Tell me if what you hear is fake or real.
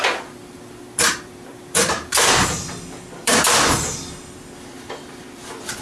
fake